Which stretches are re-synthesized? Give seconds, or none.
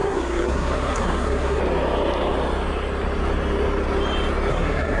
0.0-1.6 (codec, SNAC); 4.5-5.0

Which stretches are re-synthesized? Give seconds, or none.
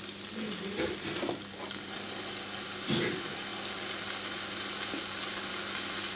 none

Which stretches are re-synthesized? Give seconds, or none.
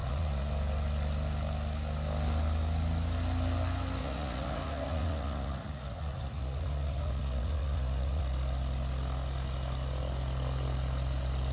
0.0-0.5 (vocoder, Vocos); 4.0-8.2